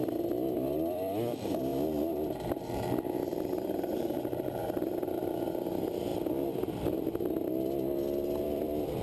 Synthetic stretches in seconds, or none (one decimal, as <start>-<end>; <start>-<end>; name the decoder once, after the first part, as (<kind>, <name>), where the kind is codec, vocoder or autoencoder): 0.0-1.7 (vocoder, BigVGAN v2); 3.4-4.6; 5.5-6.1; 8.4-9.0